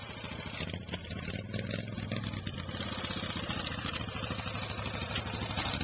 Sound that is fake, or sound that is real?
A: real